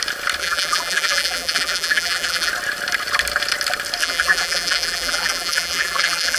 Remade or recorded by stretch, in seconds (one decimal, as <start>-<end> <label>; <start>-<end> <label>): 0.0-0.4 recorded; 0.4-2.5 remade; 2.5-4.0 recorded; 4.0-6.4 remade